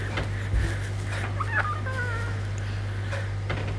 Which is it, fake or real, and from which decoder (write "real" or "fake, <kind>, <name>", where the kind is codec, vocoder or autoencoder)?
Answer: real